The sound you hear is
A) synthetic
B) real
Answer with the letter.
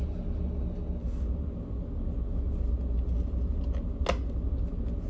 B